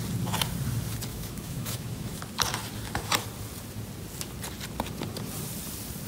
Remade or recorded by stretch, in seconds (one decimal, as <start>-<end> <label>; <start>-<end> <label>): 0.0-1.1 recorded; 1.1-2.2 remade; 2.2-6.1 recorded